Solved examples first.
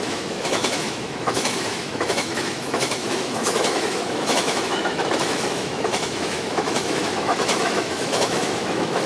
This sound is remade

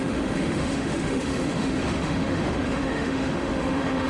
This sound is remade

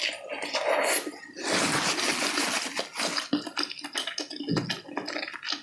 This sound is recorded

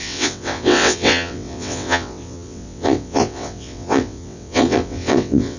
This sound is remade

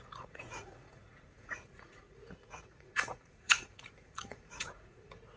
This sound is remade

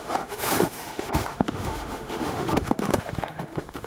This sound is remade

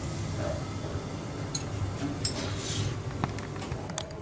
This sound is recorded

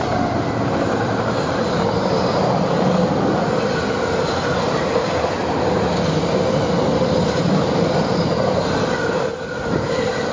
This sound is recorded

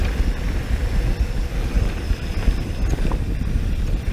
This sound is recorded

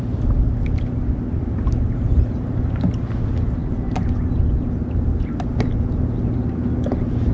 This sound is recorded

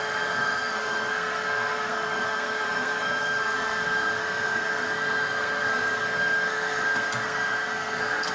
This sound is remade